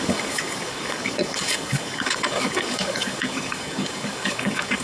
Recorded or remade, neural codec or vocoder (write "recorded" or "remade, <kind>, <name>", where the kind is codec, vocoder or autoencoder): remade, codec, DAC